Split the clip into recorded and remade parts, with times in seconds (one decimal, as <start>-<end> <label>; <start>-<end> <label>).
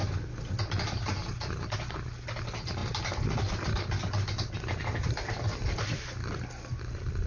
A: 0.0-7.3 recorded